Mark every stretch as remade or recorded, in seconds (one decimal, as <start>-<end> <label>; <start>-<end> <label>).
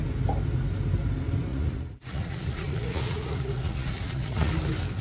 0.0-1.5 recorded; 1.5-4.5 remade; 4.5-5.0 recorded